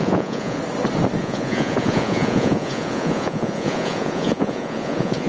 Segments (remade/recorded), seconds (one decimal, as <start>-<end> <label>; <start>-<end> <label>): 0.0-0.6 remade; 0.6-1.2 recorded; 1.2-5.3 remade